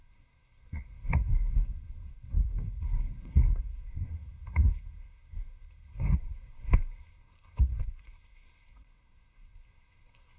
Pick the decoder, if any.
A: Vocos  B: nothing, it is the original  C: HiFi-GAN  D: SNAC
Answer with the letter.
D